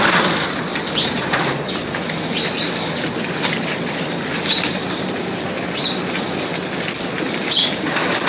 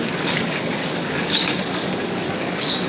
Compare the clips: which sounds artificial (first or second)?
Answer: second